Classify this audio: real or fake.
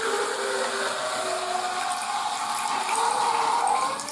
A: real